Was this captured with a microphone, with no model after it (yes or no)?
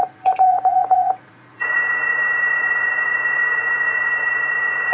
no